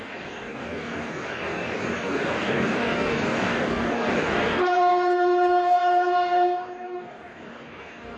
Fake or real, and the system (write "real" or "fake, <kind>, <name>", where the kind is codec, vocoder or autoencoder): fake, codec, DAC